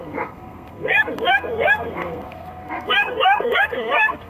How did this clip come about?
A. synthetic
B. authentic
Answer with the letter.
A